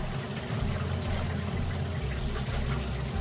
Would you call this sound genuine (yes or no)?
yes